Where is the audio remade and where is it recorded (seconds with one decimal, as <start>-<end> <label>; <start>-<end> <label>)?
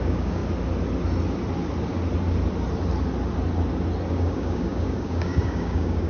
0.0-0.4 remade; 0.4-4.1 recorded; 4.1-6.1 remade